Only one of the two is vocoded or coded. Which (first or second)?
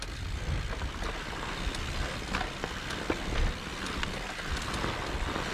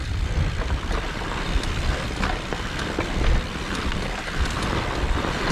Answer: second